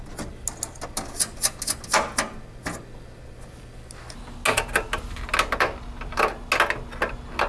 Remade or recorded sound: recorded